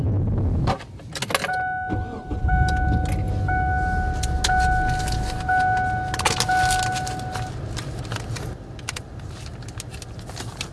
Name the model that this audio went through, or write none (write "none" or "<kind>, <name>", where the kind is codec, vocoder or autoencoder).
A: none